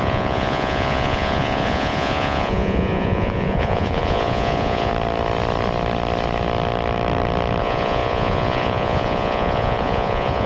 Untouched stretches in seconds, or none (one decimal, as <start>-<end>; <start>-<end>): 4.9-7.6